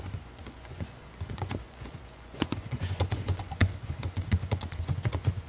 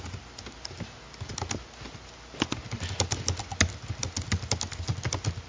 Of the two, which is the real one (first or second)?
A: second